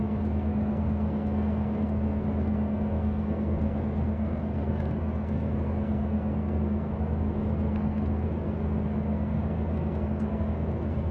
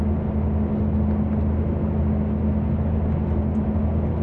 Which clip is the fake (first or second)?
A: first